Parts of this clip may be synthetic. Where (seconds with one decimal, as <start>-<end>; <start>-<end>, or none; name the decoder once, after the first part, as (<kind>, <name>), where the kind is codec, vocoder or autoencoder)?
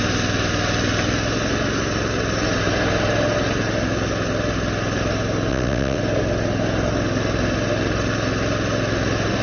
5.5-6.0 (vocoder, WaveNeXt)